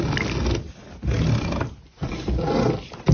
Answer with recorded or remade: recorded